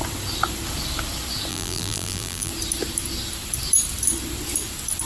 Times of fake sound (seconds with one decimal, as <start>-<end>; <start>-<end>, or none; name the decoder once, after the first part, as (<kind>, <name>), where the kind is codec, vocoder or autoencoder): 1.5-2.5 (vocoder, BigVGAN v2)